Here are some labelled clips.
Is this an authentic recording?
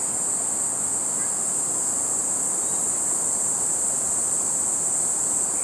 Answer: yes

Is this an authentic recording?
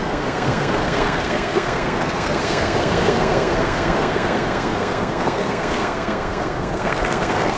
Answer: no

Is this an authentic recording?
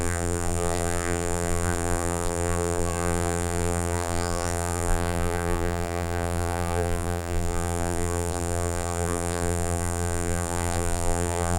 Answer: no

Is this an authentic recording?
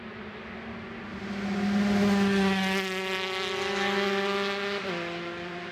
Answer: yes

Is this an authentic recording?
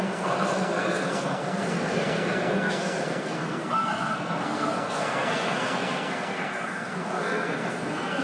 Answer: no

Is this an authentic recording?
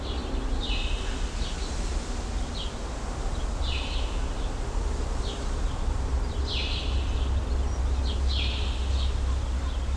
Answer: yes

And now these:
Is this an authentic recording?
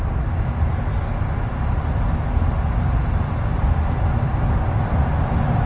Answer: yes